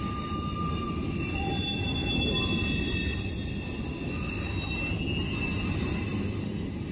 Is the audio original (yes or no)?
yes